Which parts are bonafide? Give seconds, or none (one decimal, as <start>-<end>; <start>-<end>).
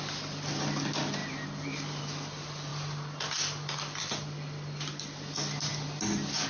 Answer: 0.0-6.5